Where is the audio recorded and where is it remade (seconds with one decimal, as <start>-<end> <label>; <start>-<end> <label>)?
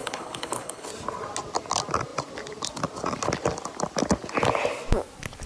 0.0-0.9 remade; 0.9-5.5 recorded